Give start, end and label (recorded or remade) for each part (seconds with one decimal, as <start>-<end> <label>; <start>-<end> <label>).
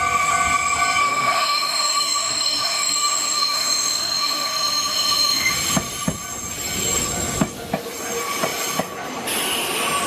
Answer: 0.0-1.0 recorded; 1.0-5.5 remade; 5.5-10.1 recorded